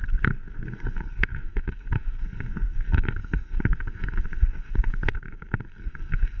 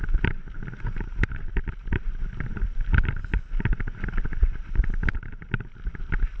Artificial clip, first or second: first